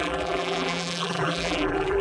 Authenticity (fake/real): fake